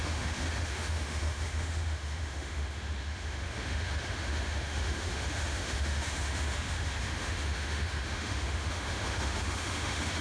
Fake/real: fake